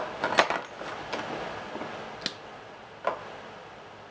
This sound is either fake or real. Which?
real